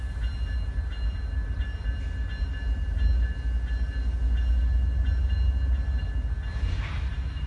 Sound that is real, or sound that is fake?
real